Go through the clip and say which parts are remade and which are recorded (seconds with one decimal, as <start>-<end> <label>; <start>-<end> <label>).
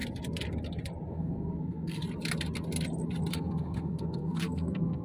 0.0-1.1 recorded; 1.1-2.0 remade; 2.0-3.3 recorded; 3.3-5.0 remade